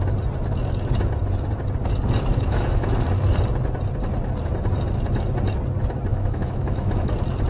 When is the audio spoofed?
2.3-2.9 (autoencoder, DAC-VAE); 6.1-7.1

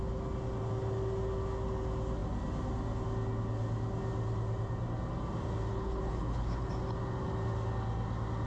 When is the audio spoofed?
5.7-6.7 (codec, HILCodec)

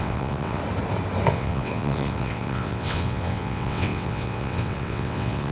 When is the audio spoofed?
0.0-0.6 (vocoder, WaveNeXt); 1.3-5.5

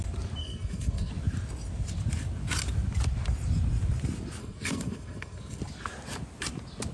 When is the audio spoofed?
0.4-1.1 (codec, SNAC); 4.4-5.6

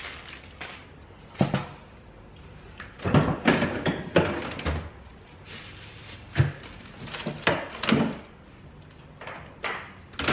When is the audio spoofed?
none

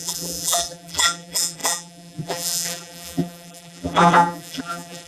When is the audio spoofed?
0.0-5.1 (vocoder, BigVGAN v2)

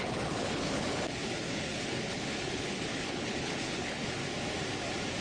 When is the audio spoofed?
0.0-4.2 (codec, HILCodec)